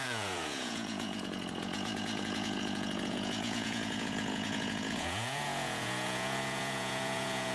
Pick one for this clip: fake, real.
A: fake